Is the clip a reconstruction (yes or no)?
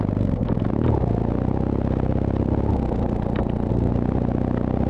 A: no